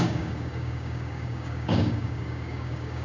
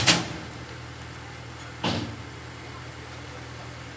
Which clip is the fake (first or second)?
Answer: first